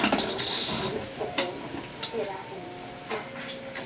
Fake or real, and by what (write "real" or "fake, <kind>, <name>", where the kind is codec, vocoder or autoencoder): real